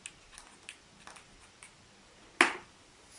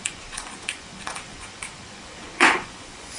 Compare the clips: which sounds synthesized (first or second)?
second